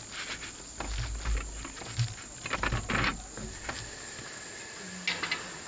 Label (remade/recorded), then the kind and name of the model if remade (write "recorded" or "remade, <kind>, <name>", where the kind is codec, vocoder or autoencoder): recorded